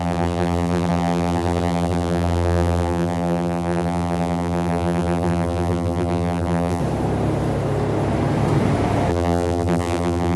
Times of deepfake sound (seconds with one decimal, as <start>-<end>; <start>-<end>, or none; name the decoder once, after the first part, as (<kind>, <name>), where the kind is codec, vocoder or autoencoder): 0.0-6.8 (vocoder, BigVGAN v2); 9.1-10.4